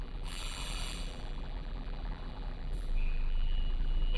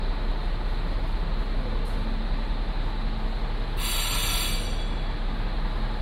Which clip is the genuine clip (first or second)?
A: second